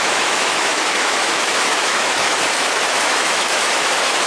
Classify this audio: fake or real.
fake